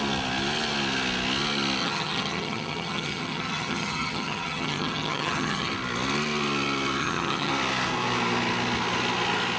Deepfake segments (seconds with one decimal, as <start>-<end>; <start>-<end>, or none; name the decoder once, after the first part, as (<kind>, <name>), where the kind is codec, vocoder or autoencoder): 1.8-5.7 (vocoder, HiFi-GAN); 7.0-7.5